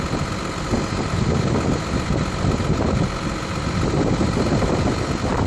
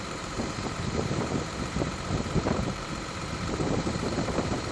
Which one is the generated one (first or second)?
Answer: second